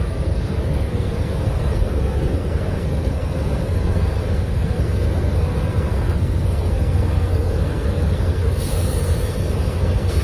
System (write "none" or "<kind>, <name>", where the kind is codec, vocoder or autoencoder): codec, SNAC